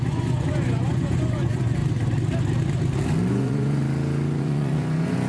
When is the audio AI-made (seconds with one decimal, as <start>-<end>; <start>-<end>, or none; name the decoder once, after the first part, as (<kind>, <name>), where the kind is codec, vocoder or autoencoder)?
0.0-1.8 (vocoder, Vocos); 3.3-3.8; 4.4-5.3